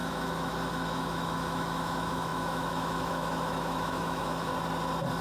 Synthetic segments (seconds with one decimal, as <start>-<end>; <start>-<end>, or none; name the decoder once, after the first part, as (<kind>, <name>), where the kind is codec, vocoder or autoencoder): 0.0-4.5 (autoencoder, DAC-VAE)